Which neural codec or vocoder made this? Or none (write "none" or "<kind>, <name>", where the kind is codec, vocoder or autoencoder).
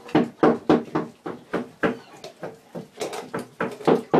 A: none